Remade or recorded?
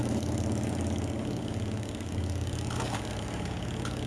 remade